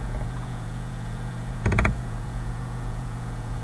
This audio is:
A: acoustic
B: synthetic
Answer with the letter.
B